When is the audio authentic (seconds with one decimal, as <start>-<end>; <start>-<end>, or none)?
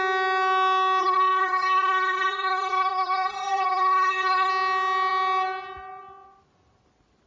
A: 0.0-1.0; 4.5-7.3